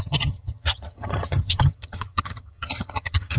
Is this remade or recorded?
remade